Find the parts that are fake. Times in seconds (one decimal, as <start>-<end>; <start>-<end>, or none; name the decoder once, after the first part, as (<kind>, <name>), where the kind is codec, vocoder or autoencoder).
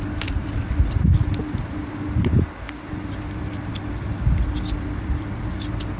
none